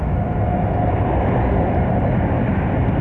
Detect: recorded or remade recorded